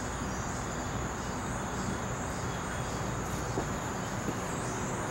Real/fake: real